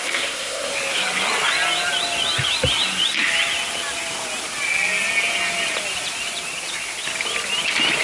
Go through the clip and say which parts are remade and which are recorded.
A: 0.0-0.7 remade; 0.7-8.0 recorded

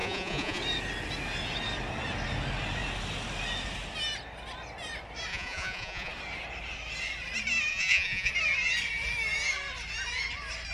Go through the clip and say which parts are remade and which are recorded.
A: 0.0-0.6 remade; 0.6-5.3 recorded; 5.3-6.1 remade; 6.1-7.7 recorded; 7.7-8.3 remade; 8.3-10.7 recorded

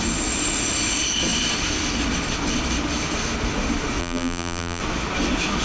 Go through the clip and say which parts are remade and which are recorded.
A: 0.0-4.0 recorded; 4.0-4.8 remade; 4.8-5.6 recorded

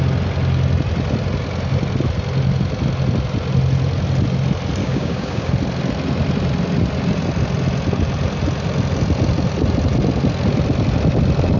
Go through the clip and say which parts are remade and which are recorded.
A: 0.0-4.8 recorded; 4.8-5.5 remade; 5.5-11.6 recorded